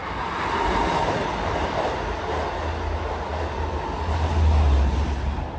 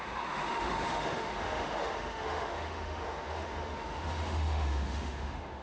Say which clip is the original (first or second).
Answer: first